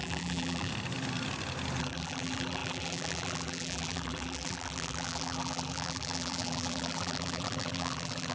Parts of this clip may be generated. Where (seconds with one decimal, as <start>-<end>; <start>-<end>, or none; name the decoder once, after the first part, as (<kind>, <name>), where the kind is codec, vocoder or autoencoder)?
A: 0.0-0.7 (vocoder, BigVGAN v2); 1.8-8.3